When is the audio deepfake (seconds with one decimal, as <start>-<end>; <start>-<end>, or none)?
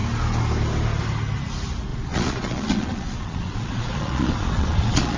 1.9-5.2